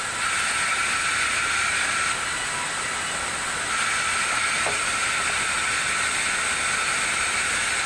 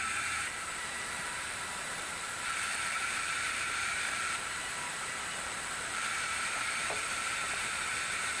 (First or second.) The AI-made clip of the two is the second